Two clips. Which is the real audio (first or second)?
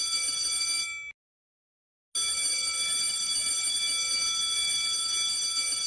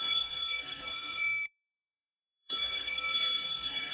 first